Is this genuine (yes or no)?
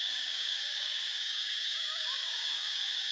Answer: no